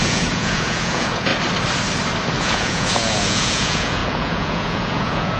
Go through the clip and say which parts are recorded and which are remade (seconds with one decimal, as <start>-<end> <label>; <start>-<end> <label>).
0.0-1.3 remade; 1.3-2.4 recorded; 2.4-5.4 remade